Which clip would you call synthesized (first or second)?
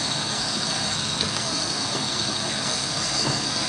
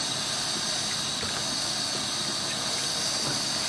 first